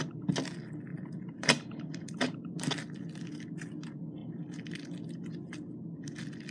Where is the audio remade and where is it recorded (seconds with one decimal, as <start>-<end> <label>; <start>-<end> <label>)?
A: 0.0-0.9 recorded; 0.9-2.6 remade; 2.6-6.5 recorded